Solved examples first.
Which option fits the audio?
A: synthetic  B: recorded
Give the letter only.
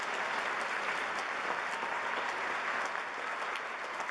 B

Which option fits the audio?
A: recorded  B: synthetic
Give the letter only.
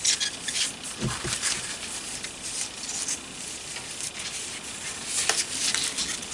A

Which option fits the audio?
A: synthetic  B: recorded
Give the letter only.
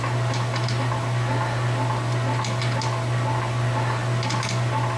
B